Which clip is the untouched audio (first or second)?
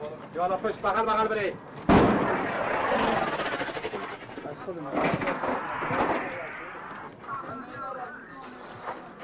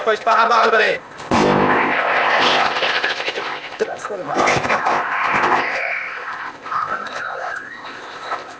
first